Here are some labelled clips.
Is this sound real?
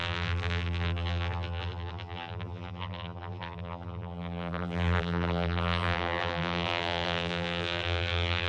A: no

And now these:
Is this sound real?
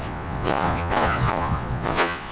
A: no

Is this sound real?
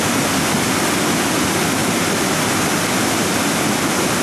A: yes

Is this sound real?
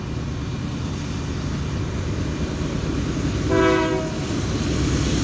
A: yes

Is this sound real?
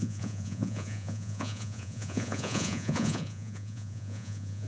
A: no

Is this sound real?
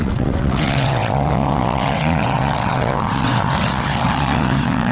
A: no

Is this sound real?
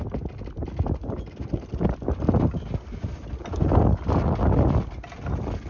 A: yes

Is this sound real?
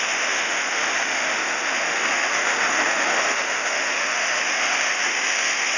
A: no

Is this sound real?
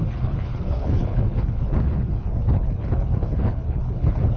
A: no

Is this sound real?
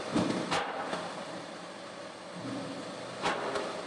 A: yes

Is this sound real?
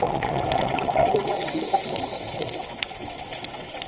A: no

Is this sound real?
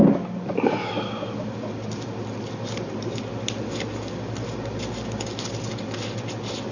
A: yes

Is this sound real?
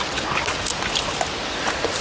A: yes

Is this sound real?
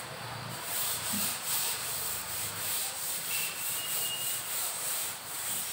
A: no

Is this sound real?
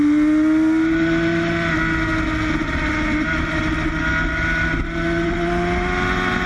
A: yes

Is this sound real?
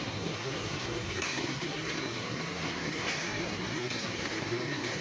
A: no